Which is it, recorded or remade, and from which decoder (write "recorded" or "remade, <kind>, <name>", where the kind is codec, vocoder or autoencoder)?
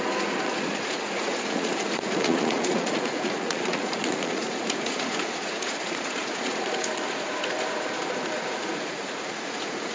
remade, vocoder, Vocos